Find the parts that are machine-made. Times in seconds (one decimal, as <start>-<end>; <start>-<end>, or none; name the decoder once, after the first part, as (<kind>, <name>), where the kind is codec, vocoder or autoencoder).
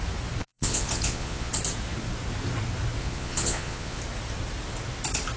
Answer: 0.4-1.5 (vocoder, Vocos); 3.0-4.0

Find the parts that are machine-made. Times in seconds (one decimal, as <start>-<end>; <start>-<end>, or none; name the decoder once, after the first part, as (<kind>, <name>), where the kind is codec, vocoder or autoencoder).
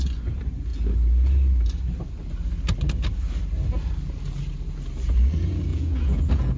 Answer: 5.7-6.6 (vocoder, Vocos)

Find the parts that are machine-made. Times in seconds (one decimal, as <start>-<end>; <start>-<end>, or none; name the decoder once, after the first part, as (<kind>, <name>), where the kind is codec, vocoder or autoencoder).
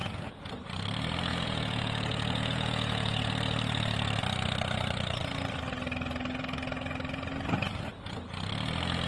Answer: 0.0-0.5 (vocoder, Vocos); 1.3-3.3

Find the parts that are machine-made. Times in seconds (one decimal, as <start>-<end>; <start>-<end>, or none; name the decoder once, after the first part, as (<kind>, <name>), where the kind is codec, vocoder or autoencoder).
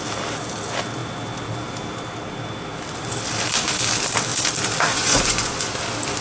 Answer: 4.9-5.7 (vocoder, Vocos)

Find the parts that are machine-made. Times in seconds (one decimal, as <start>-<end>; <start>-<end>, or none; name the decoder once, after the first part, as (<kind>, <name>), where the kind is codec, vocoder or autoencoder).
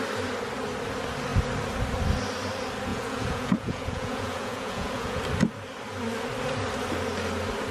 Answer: 2.9-5.2 (vocoder, Vocos)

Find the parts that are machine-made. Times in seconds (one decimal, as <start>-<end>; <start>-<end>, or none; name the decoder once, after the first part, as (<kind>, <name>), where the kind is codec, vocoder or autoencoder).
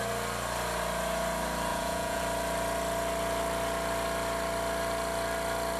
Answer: 1.7-2.2 (vocoder, Vocos)